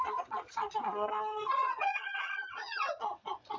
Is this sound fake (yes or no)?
yes